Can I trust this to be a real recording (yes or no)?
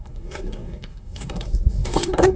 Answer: no